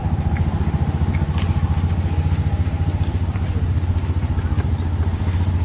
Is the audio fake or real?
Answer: real